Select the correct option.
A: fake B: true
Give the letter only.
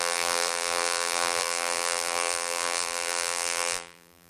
A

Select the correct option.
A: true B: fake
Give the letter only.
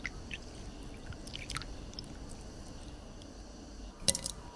A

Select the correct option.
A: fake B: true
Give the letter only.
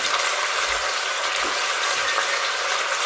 B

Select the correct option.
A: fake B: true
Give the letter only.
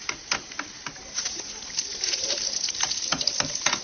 B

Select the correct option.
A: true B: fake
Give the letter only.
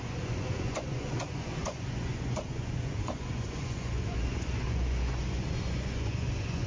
B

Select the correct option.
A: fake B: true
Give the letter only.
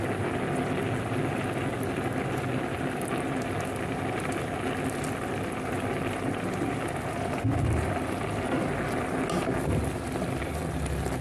B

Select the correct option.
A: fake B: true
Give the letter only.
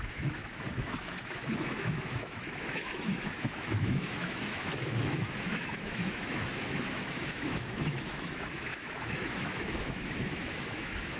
A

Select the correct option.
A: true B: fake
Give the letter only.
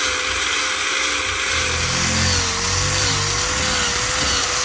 A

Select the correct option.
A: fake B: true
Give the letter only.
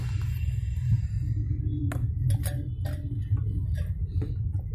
B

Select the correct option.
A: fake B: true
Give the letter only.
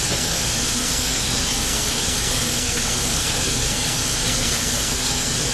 A